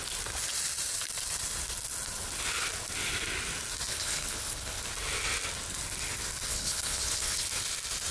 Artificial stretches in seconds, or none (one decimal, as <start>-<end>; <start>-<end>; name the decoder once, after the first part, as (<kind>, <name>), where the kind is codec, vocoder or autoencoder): 3.9-4.8 (codec, HILCodec); 6.5-7.5

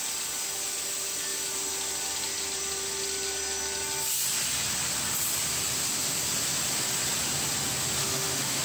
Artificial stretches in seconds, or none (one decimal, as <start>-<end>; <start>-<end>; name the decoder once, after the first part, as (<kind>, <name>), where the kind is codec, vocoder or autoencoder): 8.0-8.6 (autoencoder, DAC-VAE)

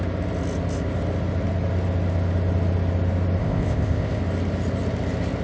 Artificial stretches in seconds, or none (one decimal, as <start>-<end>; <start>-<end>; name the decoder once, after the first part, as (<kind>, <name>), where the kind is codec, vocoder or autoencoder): 3.4-4.2 (codec, ZipCodec)